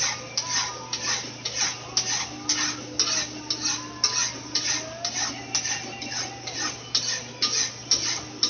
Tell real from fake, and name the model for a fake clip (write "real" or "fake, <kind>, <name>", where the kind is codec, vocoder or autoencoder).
real